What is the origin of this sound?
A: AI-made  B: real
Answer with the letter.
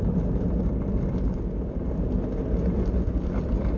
B